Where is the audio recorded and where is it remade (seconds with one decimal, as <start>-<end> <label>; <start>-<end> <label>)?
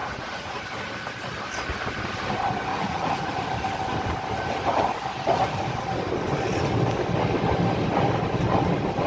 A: 0.0-0.6 remade; 0.6-2.7 recorded; 2.7-3.4 remade; 3.4-9.1 recorded